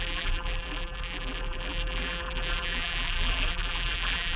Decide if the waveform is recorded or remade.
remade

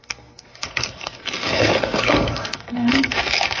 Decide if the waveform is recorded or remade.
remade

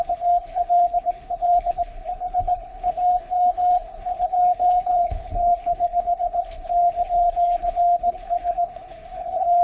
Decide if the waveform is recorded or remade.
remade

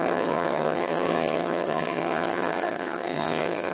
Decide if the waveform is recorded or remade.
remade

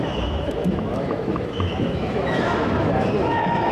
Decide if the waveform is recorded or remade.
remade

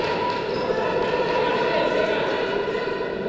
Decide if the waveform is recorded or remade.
recorded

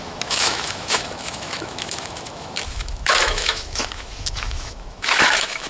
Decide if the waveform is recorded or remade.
remade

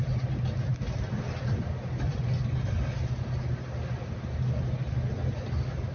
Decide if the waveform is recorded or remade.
recorded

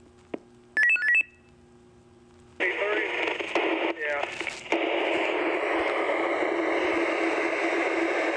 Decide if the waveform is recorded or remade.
recorded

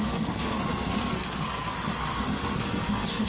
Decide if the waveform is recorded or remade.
remade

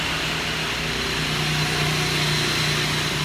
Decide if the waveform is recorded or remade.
recorded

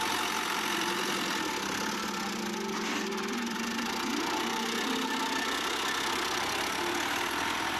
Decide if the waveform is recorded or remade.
remade